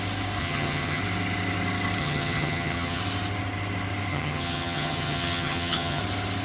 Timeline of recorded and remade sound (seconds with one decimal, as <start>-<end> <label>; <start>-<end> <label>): 0.0-0.4 recorded; 0.4-1.0 remade; 1.0-2.0 recorded; 2.0-3.0 remade; 3.0-4.1 recorded; 4.1-6.0 remade; 6.0-6.4 recorded